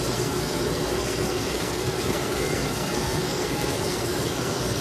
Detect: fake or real fake